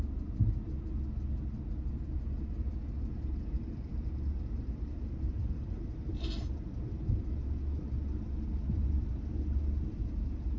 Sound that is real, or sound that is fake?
real